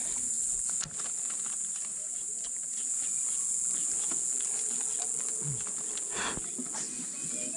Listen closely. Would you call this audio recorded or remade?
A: recorded